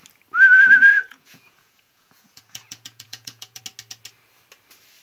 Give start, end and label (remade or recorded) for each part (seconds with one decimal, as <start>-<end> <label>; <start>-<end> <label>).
0.0-0.9 recorded; 0.9-3.6 remade; 3.6-5.0 recorded